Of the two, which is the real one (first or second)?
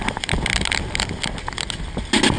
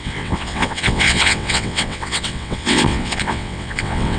first